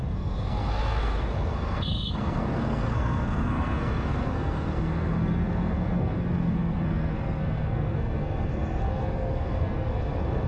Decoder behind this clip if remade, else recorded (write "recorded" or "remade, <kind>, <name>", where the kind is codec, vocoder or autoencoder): remade, codec, SNAC